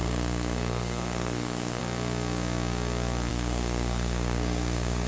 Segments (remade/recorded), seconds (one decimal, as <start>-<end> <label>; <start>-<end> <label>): 0.0-1.8 remade; 1.8-3.3 recorded; 3.3-5.1 remade